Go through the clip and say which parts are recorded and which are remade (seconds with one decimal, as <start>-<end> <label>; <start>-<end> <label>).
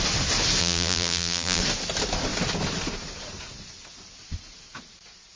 0.0-0.6 recorded; 0.6-1.6 remade; 1.6-5.4 recorded